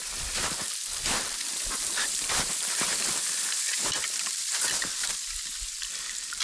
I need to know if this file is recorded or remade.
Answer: remade